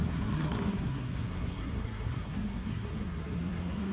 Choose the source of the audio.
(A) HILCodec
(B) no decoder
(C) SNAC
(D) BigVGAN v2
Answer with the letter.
C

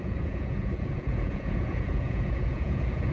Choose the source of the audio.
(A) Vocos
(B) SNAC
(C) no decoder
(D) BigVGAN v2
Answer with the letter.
A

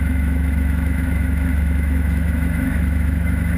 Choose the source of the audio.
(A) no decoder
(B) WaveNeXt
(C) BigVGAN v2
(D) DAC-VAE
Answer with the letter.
D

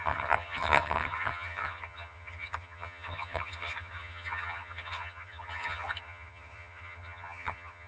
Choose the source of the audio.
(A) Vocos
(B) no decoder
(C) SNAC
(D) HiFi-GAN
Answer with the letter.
D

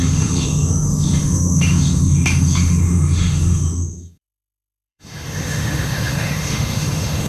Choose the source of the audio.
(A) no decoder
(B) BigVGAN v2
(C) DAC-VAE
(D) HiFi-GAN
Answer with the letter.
C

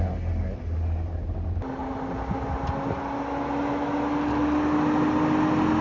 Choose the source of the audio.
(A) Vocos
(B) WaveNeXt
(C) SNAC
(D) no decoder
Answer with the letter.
D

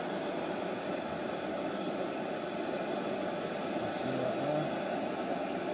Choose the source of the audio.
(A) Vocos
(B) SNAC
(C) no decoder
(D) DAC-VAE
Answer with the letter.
C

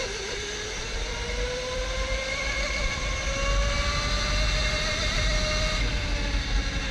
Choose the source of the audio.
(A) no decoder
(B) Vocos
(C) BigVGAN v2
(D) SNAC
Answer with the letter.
A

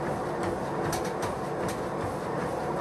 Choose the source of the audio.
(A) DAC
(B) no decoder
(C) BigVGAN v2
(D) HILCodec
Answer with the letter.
B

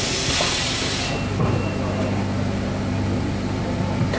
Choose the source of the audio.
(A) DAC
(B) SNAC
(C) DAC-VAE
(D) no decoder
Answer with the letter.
D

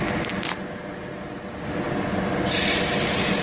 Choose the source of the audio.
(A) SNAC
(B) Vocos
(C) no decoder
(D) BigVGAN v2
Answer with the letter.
C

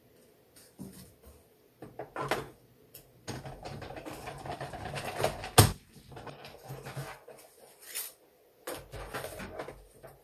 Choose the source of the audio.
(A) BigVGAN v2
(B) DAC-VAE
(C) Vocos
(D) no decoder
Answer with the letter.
D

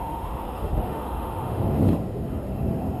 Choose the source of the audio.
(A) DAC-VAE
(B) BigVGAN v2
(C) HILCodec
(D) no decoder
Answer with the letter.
A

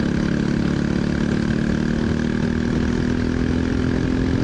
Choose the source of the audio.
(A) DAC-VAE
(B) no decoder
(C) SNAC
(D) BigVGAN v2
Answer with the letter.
B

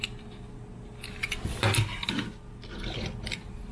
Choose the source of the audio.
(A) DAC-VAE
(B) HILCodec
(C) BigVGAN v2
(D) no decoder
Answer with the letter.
D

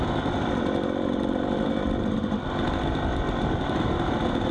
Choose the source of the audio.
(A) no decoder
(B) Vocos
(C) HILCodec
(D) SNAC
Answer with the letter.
A